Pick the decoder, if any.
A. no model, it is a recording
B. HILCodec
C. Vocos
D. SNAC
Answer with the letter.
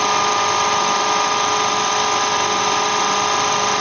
A